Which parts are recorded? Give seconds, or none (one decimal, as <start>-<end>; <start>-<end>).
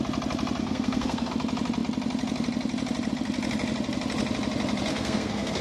0.0-0.6; 1.3-4.9